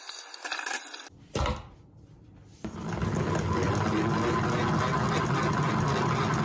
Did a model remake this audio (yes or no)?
no